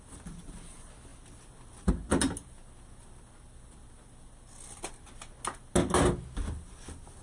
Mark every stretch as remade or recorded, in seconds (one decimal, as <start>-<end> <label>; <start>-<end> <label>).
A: 0.0-7.2 recorded